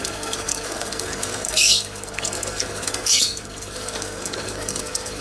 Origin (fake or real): fake